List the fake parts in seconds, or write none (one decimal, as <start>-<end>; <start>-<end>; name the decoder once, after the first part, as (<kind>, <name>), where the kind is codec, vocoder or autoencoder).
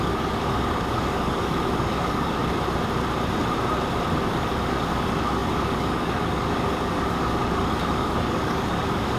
0.0-2.4 (codec, DAC); 4.2-9.2